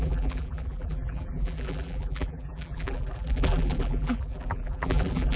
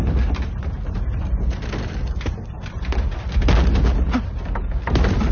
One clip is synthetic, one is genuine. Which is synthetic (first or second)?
first